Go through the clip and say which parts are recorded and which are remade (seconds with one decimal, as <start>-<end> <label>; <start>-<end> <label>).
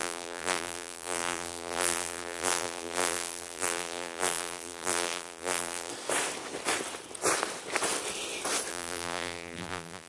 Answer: 0.0-5.9 remade; 5.9-8.7 recorded; 8.7-10.1 remade